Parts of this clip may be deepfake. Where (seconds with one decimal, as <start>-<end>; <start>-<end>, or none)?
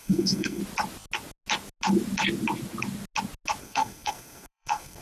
0.0-0.6; 3.6-5.0